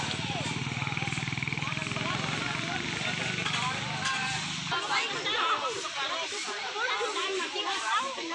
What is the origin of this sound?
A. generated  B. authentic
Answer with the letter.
B